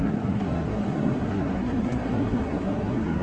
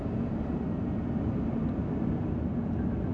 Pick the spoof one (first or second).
first